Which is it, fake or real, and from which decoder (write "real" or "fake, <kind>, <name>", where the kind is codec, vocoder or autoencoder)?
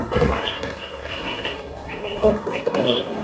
fake, codec, SNAC